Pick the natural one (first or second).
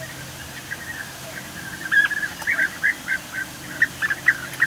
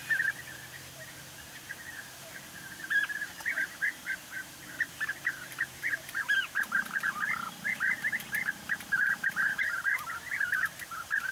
first